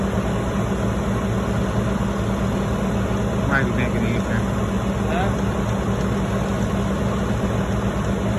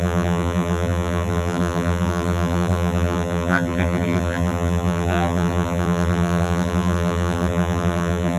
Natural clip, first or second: first